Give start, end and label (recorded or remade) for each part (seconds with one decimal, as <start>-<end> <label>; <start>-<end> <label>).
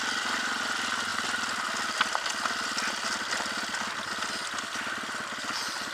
0.0-5.9 recorded